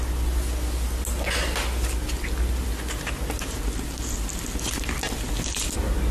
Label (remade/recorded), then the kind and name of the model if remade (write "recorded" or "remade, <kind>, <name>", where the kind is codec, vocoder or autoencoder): recorded